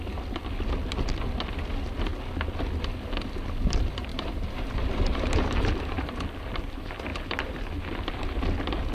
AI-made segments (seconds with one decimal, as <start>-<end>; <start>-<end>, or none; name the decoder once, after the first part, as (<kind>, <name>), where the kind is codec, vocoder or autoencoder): 4.1-6.1 (vocoder, BigVGAN v2)